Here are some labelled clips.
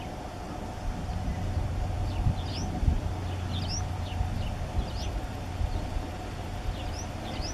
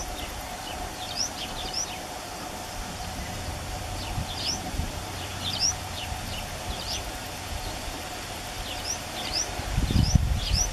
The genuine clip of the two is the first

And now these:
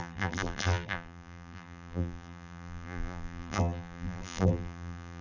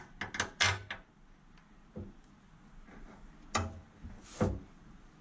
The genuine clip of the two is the second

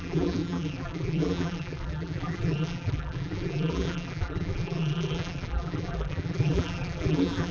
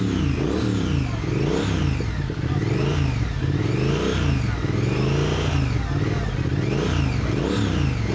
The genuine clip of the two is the second